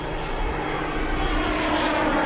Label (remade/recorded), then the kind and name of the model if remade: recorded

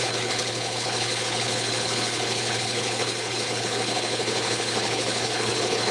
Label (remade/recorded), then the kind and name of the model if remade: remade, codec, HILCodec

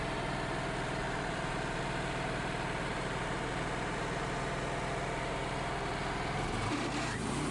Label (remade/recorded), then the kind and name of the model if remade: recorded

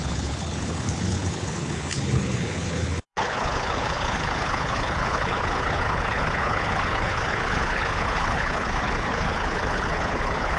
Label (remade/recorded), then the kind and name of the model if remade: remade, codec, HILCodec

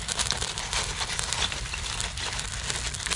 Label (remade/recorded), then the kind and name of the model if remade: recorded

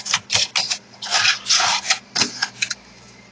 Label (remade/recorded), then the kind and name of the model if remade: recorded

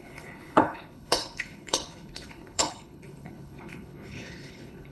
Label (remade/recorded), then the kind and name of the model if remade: remade, codec, HILCodec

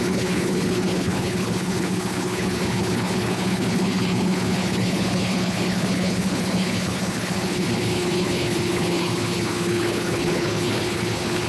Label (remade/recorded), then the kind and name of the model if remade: remade, codec, HILCodec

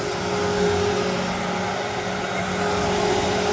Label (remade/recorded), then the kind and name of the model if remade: recorded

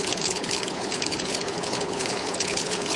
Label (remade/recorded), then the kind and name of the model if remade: remade, codec, HILCodec